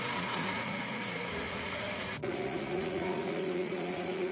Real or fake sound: fake